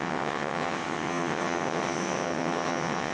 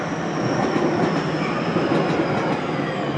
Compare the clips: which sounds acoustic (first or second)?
second